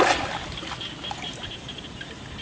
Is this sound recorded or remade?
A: recorded